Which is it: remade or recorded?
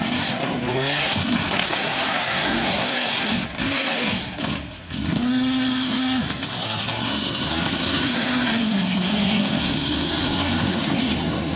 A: remade